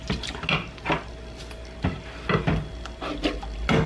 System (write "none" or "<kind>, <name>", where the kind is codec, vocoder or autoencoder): none